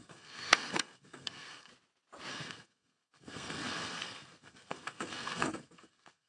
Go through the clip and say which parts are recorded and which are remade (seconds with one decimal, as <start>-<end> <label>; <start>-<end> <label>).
0.0-1.7 remade; 1.7-2.3 recorded; 2.3-6.3 remade